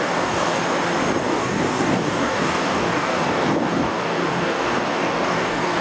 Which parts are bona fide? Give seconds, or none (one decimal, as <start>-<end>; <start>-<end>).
0.6-1.2